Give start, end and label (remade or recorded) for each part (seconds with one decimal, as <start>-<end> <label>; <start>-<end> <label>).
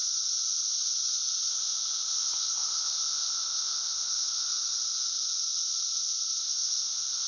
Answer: 0.0-1.5 recorded; 1.5-4.5 remade; 4.5-6.4 recorded; 6.4-7.3 remade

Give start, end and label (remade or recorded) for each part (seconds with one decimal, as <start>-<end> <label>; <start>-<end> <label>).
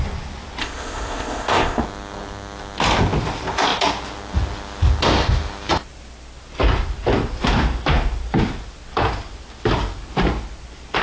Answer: 0.0-0.6 recorded; 0.6-1.8 remade; 1.8-11.0 recorded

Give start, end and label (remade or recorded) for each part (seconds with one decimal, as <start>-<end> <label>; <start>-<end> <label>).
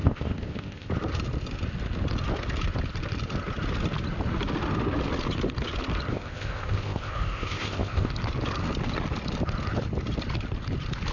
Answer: 0.0-0.9 remade; 0.9-6.1 recorded; 6.1-8.1 remade; 8.1-11.1 recorded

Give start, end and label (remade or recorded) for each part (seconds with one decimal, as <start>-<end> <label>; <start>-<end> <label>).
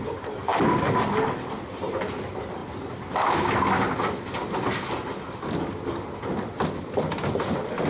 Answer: 0.0-7.9 recorded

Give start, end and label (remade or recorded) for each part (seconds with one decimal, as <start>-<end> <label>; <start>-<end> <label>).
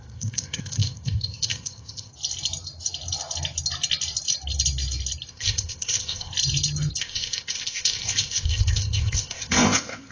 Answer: 0.0-2.1 remade; 2.1-5.3 recorded; 5.3-6.3 remade; 6.3-7.0 recorded; 7.0-10.1 remade